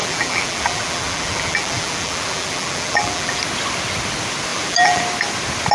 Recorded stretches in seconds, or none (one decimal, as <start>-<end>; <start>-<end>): 3.4-4.5; 5.0-5.7